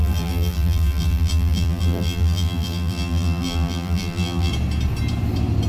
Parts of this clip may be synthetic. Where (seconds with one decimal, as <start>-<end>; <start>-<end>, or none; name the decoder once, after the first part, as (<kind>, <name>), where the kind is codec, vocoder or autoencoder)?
0.0-4.5 (vocoder, BigVGAN v2)